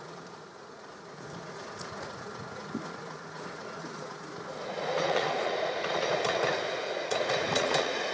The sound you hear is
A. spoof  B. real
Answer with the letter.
A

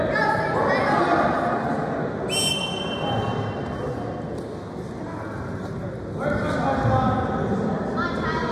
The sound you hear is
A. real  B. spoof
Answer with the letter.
A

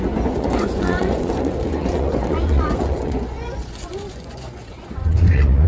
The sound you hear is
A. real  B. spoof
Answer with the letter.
B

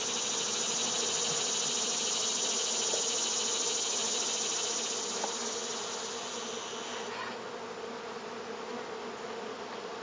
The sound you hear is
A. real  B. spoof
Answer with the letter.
A